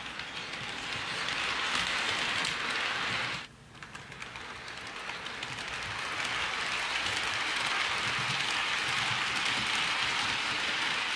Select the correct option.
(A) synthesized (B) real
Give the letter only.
B